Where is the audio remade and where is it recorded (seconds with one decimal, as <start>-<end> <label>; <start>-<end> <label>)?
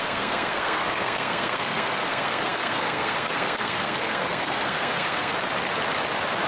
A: 0.0-5.3 remade; 5.3-6.5 recorded